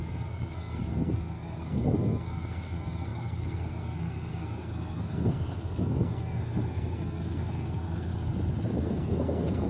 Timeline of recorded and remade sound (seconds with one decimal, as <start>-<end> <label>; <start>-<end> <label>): 0.0-8.1 remade; 8.1-8.8 recorded; 8.8-9.7 remade